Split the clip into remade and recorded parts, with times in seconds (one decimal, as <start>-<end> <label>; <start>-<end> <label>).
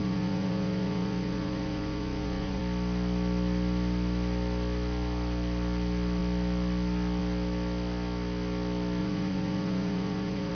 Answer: 0.0-2.6 remade; 2.6-9.0 recorded; 9.0-10.5 remade